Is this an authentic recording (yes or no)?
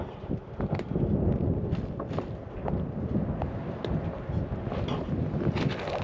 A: yes